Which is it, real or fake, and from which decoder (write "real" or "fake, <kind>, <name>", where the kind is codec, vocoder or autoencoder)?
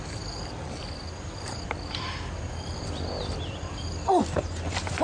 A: real